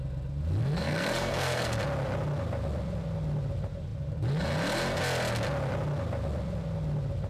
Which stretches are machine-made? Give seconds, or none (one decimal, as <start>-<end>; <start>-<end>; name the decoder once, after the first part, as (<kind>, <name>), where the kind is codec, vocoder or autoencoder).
0.6-1.8 (codec, SNAC)